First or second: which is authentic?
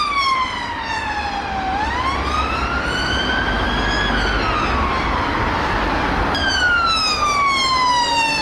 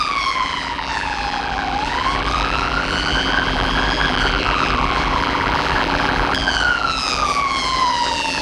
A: first